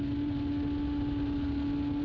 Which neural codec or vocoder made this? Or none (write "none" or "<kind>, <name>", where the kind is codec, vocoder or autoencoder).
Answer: none